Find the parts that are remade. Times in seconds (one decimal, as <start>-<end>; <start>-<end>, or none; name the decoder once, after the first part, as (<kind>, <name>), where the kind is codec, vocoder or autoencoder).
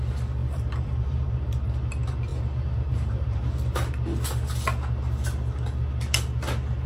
0.4-1.9 (vocoder, BigVGAN v2); 2.3-3.4